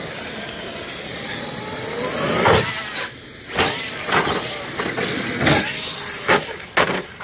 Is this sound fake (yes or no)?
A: no